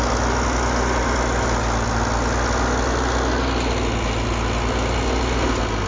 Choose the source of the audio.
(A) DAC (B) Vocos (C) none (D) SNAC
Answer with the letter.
C